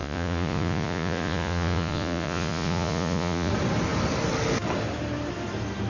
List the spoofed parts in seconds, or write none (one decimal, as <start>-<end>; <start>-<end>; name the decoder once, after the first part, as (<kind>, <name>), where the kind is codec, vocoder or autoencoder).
0.0-3.5 (vocoder, Vocos)